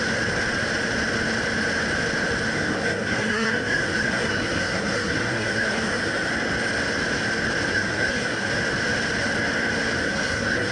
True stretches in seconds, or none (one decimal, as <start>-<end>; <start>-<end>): 0.0-2.5; 6.3-7.7; 8.5-10.0